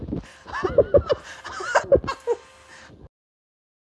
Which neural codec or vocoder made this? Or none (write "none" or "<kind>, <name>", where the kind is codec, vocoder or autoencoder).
none